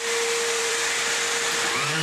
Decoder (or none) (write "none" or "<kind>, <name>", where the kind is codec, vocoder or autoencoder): vocoder, BigVGAN v2